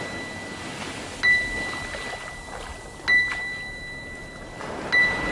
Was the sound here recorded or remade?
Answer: recorded